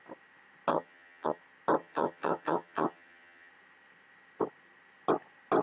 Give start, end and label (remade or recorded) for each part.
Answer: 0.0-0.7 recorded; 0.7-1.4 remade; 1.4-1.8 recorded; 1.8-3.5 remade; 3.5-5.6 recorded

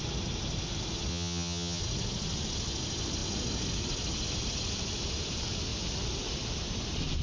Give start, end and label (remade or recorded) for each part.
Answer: 0.0-1.1 recorded; 1.1-1.8 remade; 1.8-7.2 recorded

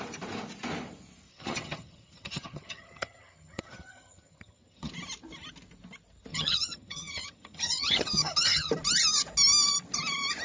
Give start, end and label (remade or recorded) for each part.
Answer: 0.0-1.3 recorded; 1.3-4.9 remade; 4.9-6.3 recorded; 6.3-8.7 remade; 8.7-10.4 recorded